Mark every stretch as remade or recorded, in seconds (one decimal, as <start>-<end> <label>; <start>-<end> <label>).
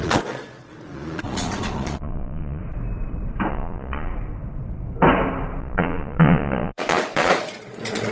0.0-2.6 remade; 2.6-3.5 recorded; 3.5-4.1 remade; 4.1-5.6 recorded; 5.6-8.1 remade